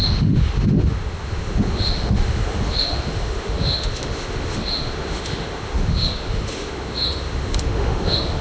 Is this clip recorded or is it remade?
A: remade